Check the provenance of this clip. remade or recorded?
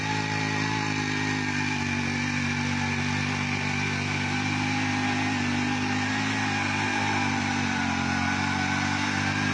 recorded